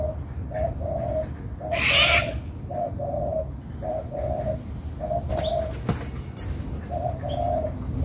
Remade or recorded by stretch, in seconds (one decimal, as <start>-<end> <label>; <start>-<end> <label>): 0.0-8.0 recorded